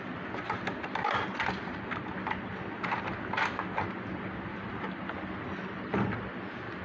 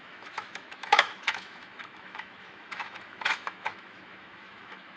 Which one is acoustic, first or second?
first